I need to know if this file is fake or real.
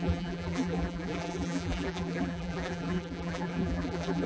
fake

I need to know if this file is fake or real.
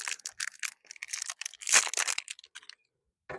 real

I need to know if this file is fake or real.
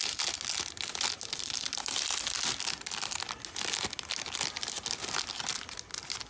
real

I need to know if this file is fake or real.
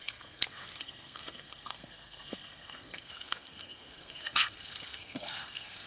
fake